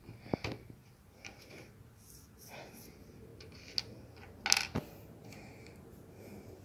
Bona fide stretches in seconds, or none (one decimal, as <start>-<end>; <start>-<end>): 0.0-6.6